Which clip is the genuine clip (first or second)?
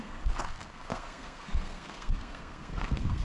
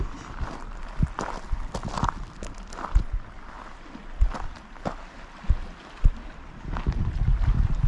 second